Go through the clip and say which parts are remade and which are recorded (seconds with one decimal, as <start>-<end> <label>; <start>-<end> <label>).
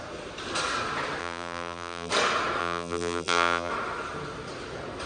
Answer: 0.0-1.2 recorded; 1.2-2.1 remade; 2.1-2.6 recorded; 2.6-3.7 remade; 3.7-5.1 recorded